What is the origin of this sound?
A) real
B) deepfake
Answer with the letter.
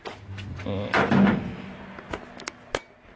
A